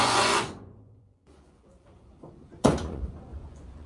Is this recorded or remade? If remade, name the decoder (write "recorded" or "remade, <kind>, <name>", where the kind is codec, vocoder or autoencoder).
remade, vocoder, Vocos